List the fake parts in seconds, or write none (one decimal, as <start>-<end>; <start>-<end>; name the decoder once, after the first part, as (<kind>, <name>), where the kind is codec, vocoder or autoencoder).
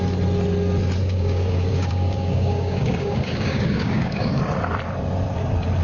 1.0-4.4 (codec, DAC)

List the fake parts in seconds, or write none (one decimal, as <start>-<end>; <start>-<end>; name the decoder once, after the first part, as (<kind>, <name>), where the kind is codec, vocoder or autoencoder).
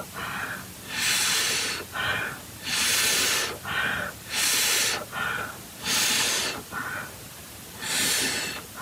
none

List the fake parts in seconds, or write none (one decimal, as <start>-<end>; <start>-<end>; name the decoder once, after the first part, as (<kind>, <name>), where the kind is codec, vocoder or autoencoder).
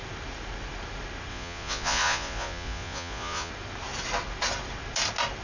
1.3-3.5 (vocoder, Vocos)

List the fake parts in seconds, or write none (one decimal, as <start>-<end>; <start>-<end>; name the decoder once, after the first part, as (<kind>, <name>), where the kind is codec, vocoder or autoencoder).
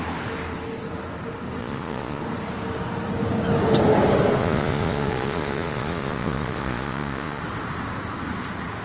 1.6-2.2 (vocoder, Vocos); 4.4-7.4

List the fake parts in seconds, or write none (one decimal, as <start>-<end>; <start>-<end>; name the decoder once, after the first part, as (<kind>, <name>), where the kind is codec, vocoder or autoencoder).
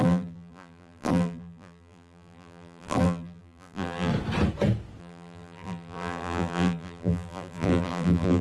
0.0-4.1 (vocoder, BigVGAN v2); 5.0-8.4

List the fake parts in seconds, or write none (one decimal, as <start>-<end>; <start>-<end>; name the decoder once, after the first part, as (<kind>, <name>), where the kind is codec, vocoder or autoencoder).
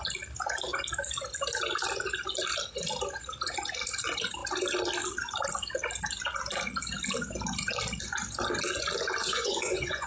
9.2-10.1 (vocoder, Vocos)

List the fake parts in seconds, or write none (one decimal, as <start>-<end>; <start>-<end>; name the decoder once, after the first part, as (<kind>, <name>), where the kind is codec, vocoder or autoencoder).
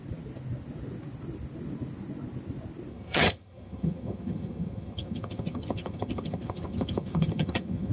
2.9-7.9 (vocoder, HiFi-GAN)